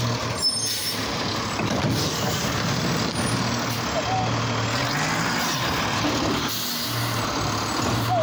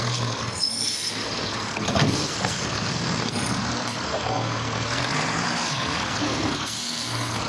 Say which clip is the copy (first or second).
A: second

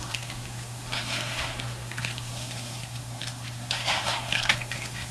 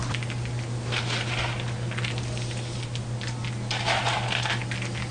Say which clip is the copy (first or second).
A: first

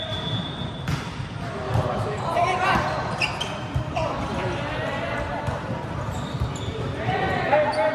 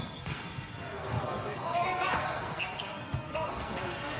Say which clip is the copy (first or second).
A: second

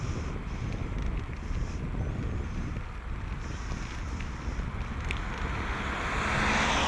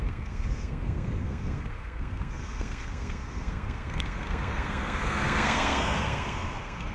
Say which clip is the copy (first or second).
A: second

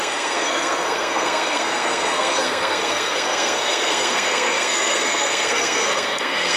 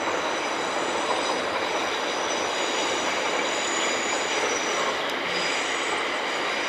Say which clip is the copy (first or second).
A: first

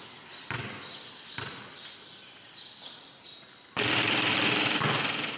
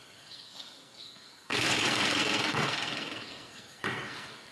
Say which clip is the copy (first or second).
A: second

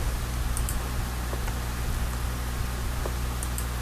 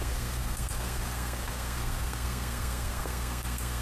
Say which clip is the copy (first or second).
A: second